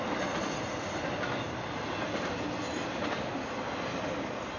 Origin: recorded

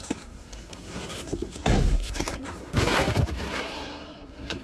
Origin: remade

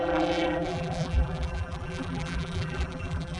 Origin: remade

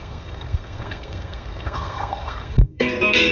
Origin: remade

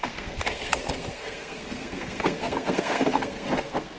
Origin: remade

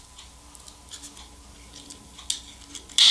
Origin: recorded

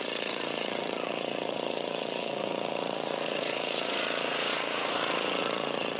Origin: remade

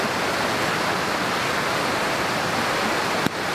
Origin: recorded